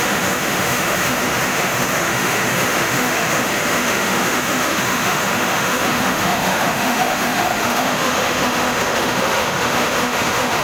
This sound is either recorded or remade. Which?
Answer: remade